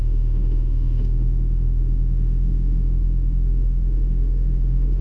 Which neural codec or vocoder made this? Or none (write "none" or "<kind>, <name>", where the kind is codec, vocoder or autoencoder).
autoencoder, DAC-VAE